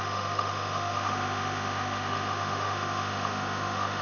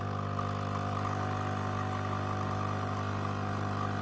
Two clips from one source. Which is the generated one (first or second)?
first